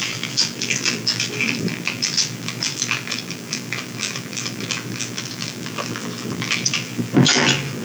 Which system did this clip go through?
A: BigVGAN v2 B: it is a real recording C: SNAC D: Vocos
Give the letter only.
A